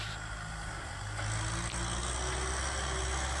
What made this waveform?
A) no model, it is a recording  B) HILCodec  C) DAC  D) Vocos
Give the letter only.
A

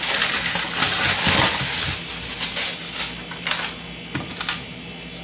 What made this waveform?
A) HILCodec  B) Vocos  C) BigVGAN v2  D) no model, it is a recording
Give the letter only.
D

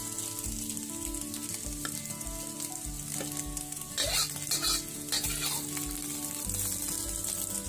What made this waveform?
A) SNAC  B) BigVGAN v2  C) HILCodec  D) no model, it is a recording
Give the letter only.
D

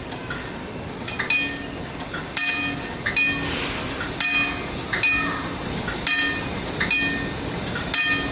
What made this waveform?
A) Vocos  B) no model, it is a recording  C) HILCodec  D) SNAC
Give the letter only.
B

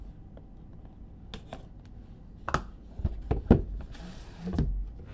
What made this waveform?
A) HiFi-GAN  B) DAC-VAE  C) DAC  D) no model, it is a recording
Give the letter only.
D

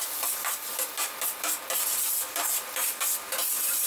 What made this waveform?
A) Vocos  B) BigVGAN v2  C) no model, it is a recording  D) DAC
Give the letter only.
B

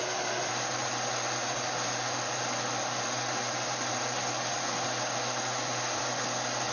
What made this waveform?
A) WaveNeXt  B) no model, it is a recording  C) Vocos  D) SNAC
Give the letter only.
B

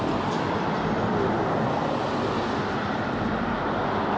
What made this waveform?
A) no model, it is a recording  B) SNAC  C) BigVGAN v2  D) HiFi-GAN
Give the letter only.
A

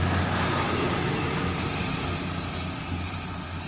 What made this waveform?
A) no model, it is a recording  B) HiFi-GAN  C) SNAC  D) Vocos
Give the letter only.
A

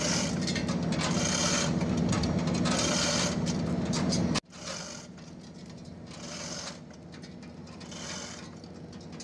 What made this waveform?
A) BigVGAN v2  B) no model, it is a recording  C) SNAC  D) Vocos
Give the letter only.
B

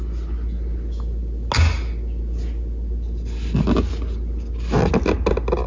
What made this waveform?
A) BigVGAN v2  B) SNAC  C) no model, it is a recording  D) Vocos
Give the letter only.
C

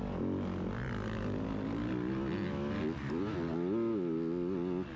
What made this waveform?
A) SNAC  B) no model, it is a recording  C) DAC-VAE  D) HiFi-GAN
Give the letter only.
B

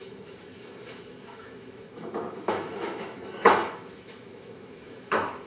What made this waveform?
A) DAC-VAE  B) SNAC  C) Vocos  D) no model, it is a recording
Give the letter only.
A